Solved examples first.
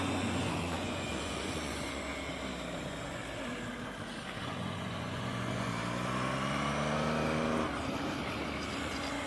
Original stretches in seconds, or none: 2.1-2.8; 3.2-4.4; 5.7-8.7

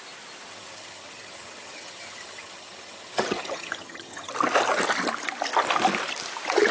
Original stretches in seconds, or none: 0.0-0.5; 4.3-6.7

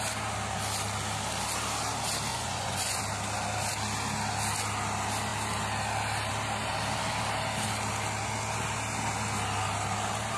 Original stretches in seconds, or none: 0.0-2.3; 3.0-10.4

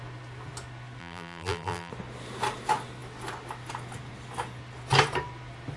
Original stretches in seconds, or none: 0.0-1.0; 1.9-5.8

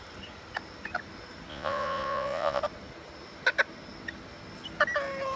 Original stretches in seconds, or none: 0.0-1.5; 2.6-5.4

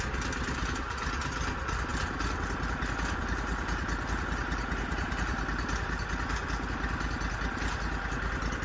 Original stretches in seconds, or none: 0.0-8.6